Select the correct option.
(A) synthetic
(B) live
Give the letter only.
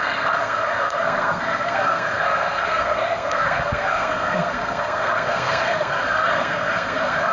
A